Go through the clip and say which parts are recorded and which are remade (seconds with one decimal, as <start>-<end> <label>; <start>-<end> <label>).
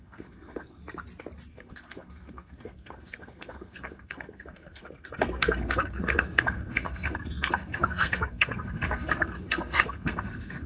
0.0-0.8 remade; 0.8-1.5 recorded; 1.5-10.7 remade